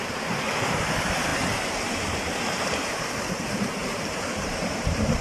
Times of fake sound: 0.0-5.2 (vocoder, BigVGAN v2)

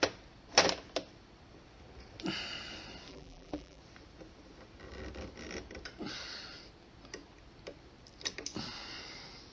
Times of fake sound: 3.1-3.8 (vocoder, BigVGAN v2)

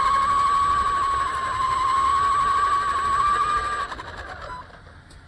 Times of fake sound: none

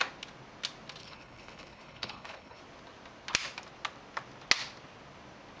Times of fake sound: 1.0-2.6 (codec, HILCodec)

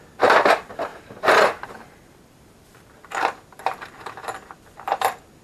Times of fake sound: 0.9-2.9 (vocoder, BigVGAN v2)

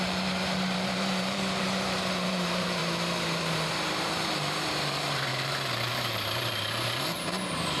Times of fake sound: 0.0-7.8 (vocoder, BigVGAN v2)

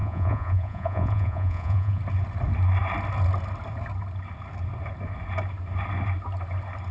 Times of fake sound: 0.0-2.0 (vocoder, Vocos)